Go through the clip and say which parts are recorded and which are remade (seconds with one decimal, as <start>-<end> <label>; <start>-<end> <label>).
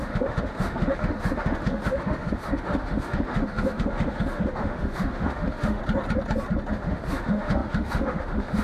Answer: 0.0-5.8 remade; 5.8-6.7 recorded; 6.7-8.6 remade